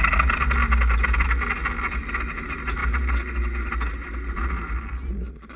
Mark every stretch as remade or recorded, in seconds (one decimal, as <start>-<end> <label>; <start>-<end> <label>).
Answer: 0.0-5.6 recorded